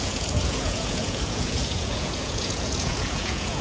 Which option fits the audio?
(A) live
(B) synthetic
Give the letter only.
B